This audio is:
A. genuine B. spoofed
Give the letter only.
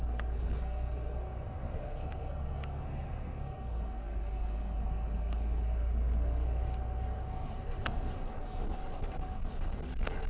B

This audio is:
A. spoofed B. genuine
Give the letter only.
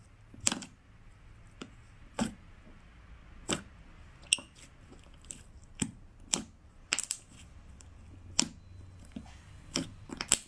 B